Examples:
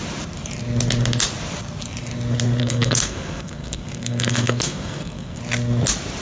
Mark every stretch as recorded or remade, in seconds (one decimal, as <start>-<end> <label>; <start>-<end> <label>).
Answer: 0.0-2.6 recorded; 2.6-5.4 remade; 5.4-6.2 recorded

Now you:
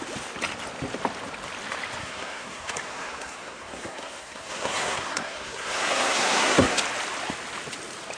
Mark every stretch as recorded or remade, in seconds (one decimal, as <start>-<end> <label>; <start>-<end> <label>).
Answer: 0.0-2.0 recorded; 2.0-6.8 remade; 6.8-8.2 recorded

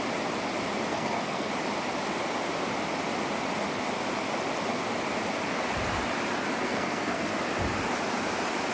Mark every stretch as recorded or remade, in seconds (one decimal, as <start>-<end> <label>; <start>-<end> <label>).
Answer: 0.0-0.9 recorded; 0.9-1.5 remade; 1.5-6.6 recorded; 6.6-7.3 remade; 7.3-8.7 recorded